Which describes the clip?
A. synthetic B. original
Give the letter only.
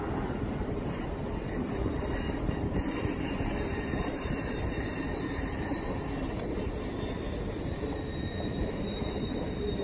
A